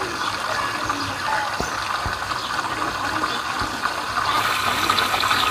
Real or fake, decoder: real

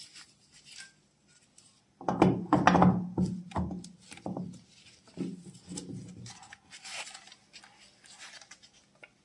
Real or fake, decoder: real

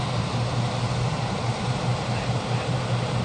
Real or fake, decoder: fake, vocoder, BigVGAN v2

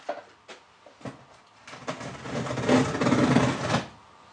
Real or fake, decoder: real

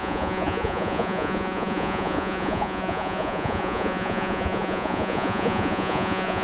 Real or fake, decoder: fake, vocoder, Vocos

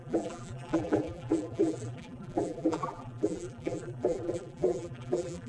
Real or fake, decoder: fake, vocoder, BigVGAN v2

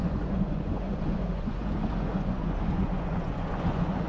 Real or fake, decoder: fake, vocoder, Vocos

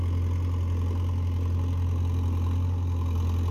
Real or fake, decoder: real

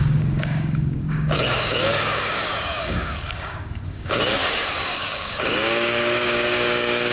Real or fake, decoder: fake, codec, DAC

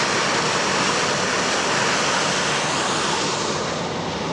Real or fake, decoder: real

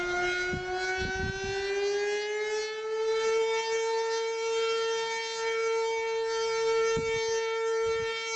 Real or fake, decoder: real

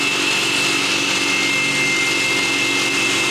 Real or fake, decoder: real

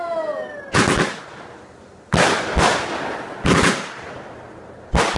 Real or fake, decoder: real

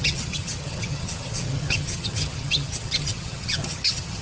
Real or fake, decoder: fake, vocoder, HiFi-GAN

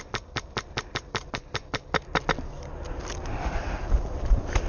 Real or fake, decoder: real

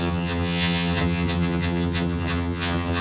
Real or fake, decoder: fake, vocoder, HiFi-GAN